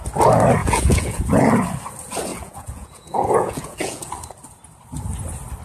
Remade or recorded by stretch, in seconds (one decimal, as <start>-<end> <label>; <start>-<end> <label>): 0.0-0.6 recorded; 0.6-1.2 remade; 1.2-2.3 recorded; 2.3-4.1 remade; 4.1-5.6 recorded